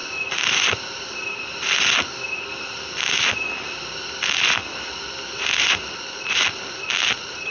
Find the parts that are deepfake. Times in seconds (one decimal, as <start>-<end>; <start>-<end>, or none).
none